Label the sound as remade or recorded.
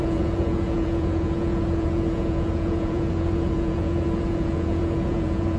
remade